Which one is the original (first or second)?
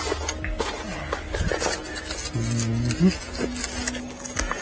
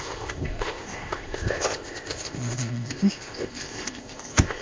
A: first